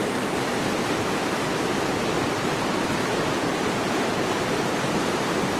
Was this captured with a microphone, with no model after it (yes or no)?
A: no